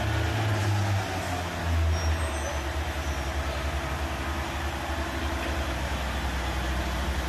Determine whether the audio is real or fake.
real